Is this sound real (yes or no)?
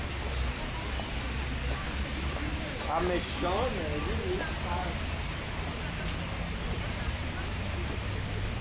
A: yes